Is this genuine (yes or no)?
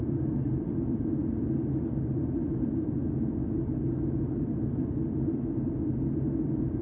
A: yes